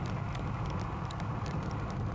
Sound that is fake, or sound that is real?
real